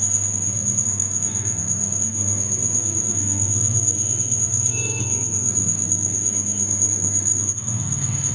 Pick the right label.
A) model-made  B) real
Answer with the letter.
A